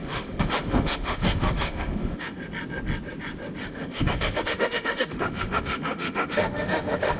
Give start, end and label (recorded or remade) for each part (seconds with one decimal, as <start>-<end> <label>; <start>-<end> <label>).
0.0-2.4 remade; 2.4-3.6 recorded; 3.6-7.2 remade